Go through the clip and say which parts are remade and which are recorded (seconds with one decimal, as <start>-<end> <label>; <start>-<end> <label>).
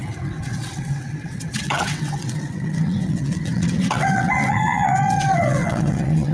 0.0-6.3 remade